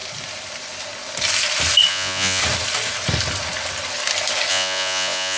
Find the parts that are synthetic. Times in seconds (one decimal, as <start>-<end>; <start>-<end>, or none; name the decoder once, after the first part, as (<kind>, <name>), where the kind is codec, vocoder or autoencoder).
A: 1.9-2.4 (vocoder, Vocos); 4.5-5.4